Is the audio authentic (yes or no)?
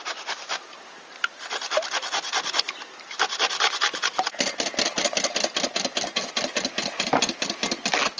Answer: yes